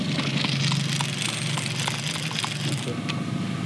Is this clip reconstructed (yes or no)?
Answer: no